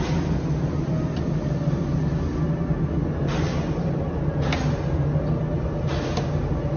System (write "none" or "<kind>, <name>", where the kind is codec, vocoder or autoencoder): none